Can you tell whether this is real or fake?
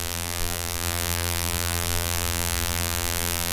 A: fake